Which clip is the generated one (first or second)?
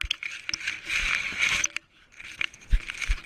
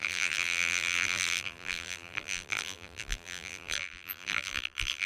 second